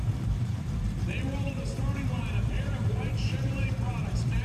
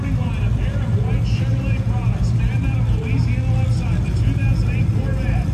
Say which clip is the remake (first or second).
first